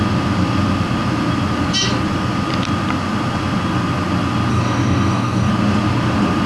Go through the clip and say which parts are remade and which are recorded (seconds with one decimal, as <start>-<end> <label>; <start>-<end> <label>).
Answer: 0.0-4.5 recorded; 4.5-5.5 remade; 5.5-6.5 recorded